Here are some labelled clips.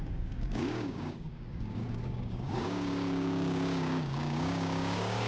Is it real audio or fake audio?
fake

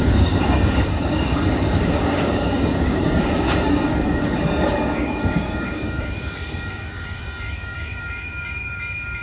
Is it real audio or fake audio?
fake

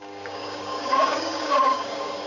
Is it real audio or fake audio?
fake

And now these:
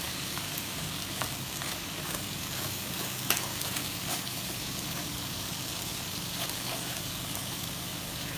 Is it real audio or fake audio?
fake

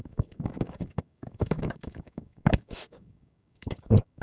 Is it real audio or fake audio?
fake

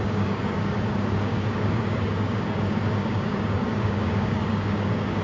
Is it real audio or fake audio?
fake